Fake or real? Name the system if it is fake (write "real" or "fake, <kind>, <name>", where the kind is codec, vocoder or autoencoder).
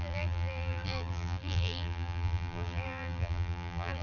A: fake, vocoder, BigVGAN v2